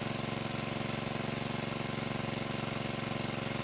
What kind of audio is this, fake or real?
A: real